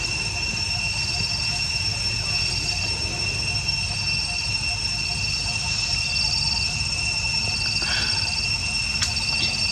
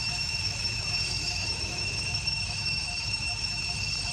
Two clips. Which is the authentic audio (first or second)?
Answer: first